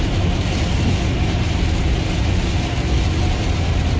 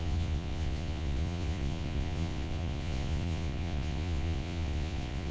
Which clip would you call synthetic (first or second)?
second